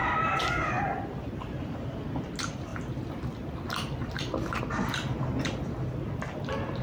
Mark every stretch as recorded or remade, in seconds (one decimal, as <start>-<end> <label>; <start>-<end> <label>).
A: 0.0-0.8 remade; 0.8-2.7 recorded; 2.7-4.6 remade; 4.6-6.8 recorded